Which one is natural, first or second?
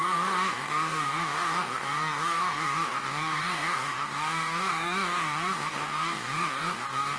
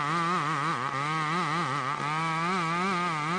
second